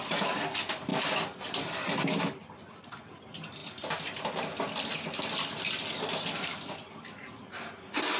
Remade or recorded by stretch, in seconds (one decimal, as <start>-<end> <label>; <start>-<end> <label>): 0.0-8.2 recorded